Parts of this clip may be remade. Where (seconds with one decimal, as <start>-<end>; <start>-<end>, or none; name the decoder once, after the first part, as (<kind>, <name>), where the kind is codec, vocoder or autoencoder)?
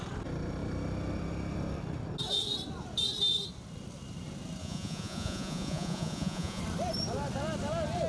4.6-6.6 (vocoder, Vocos)